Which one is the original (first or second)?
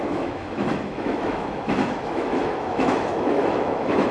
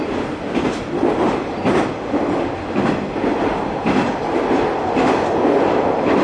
second